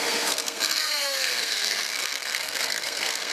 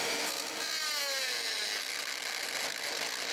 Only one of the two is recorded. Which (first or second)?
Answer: second